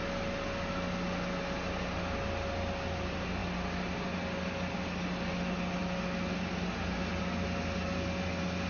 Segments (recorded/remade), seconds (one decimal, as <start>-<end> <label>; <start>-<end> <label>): 0.0-8.7 recorded